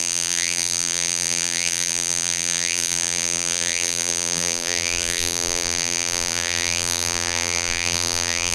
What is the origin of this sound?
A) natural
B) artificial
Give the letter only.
B